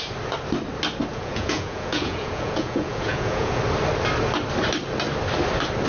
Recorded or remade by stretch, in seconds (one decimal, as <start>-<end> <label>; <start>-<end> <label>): 0.0-1.1 recorded; 1.1-3.6 remade; 3.6-5.9 recorded